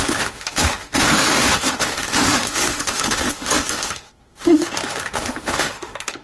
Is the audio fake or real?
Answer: fake